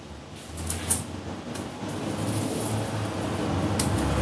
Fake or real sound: real